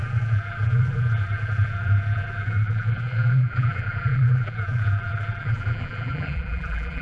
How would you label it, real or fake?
fake